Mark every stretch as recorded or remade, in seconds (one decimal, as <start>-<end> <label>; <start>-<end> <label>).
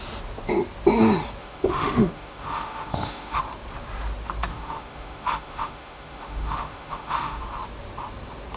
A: 0.0-1.4 recorded; 1.4-3.4 remade; 3.4-4.5 recorded; 4.5-7.4 remade; 7.4-8.6 recorded